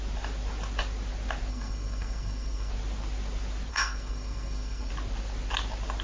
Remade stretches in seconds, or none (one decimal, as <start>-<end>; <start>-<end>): 1.5-2.7; 3.7-4.9